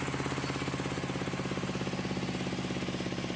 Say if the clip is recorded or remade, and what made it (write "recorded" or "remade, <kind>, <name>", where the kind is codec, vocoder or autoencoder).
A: recorded